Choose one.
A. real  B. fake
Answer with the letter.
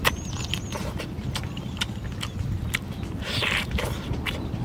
B